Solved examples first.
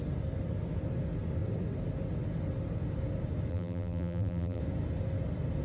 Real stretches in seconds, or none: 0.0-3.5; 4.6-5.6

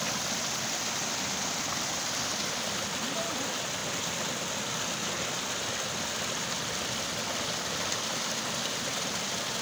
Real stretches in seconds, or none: 3.8-7.1